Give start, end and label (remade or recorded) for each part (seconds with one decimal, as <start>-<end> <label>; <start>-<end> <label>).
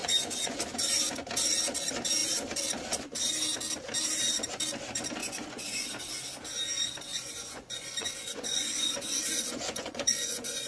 0.0-0.6 remade; 0.6-5.2 recorded; 5.2-5.9 remade; 5.9-7.1 recorded; 7.1-10.7 remade